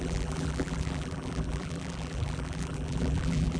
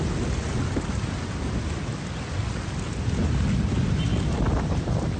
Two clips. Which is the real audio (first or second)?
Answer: second